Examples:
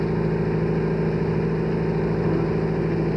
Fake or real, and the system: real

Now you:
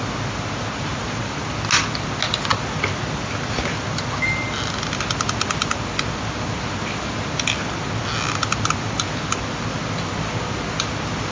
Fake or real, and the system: real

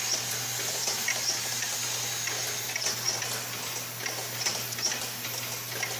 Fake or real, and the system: real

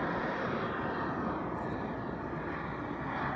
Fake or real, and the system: real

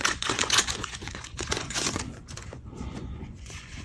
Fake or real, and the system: fake, vocoder, Vocos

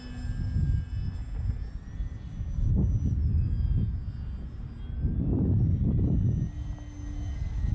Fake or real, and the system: real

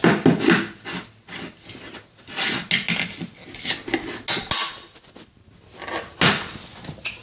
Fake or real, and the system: real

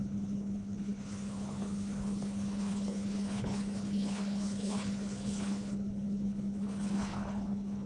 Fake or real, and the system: fake, codec, HILCodec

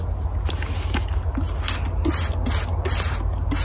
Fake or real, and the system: real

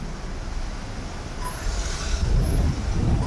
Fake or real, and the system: real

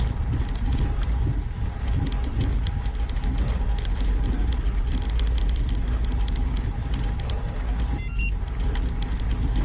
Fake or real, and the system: real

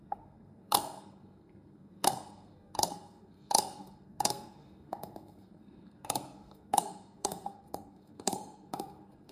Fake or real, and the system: fake, codec, SNAC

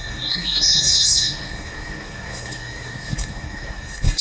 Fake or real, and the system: fake, codec, SNAC